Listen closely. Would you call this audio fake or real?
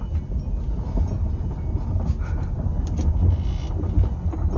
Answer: real